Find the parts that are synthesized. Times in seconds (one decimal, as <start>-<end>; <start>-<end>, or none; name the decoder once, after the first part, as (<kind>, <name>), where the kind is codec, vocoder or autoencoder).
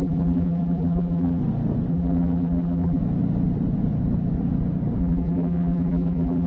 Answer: 0.0-1.4 (vocoder, BigVGAN v2); 1.9-3.0; 5.0-6.5